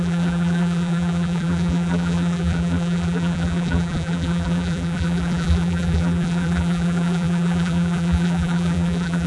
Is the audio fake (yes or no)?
yes